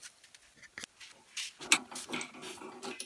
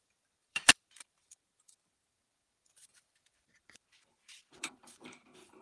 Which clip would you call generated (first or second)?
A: second